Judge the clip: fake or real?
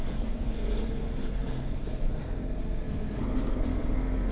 fake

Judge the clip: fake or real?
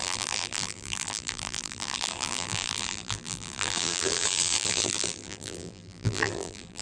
fake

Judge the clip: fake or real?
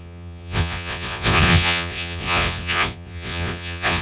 fake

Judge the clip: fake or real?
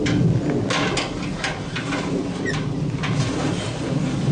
real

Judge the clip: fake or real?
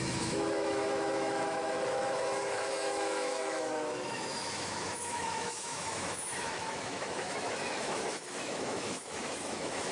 fake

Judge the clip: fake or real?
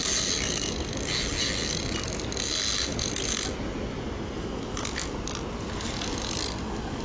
real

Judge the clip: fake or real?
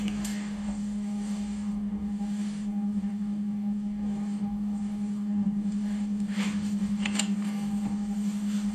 fake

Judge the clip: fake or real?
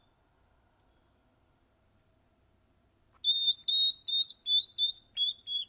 real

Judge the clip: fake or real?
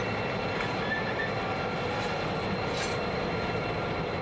real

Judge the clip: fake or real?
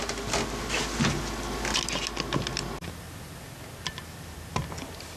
real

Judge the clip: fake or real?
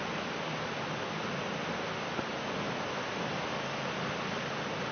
real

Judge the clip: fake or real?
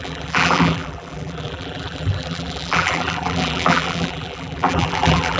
fake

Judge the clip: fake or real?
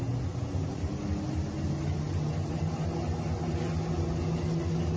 real